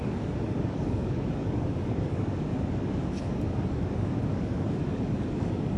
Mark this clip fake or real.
fake